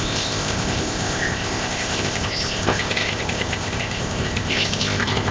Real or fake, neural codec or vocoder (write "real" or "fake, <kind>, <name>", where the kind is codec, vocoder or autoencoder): fake, codec, ZipCodec